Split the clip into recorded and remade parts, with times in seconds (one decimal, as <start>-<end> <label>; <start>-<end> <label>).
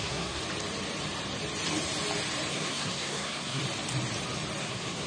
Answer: 0.0-0.4 remade; 0.4-2.5 recorded; 2.5-3.6 remade; 3.6-4.6 recorded; 4.6-5.1 remade